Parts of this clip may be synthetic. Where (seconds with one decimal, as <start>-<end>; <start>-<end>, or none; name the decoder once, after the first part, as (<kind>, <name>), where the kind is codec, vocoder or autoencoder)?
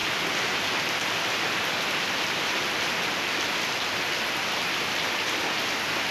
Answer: none